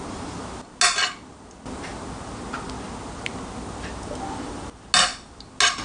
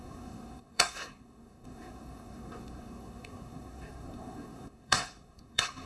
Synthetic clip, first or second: second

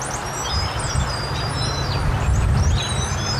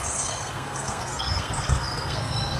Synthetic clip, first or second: second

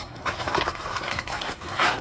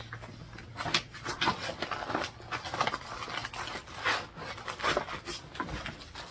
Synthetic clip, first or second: first